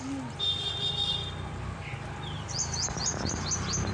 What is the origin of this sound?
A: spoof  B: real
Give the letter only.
B